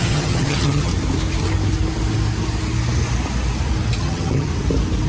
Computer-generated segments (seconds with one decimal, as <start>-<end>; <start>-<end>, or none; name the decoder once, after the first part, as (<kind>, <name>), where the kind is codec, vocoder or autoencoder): 0.0-0.9 (vocoder, HiFi-GAN); 4.0-4.5